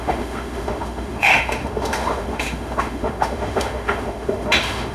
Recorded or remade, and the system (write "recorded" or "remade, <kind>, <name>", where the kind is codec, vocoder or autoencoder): remade, autoencoder, DAC-VAE